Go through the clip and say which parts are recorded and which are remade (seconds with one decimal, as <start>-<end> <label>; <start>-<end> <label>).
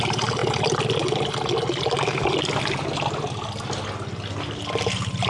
0.0-5.3 remade